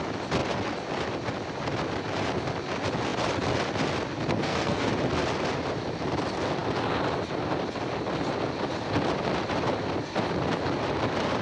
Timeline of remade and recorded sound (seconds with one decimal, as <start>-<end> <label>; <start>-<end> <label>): 0.0-4.3 recorded; 4.3-4.9 remade; 4.9-11.4 recorded